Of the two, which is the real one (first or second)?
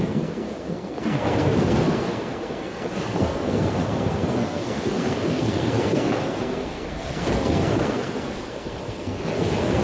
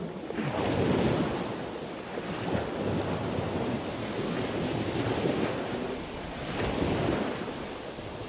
second